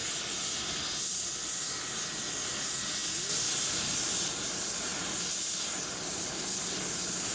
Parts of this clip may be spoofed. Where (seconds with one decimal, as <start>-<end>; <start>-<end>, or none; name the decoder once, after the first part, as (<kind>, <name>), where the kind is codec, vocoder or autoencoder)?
4.9-6.8 (vocoder, BigVGAN v2)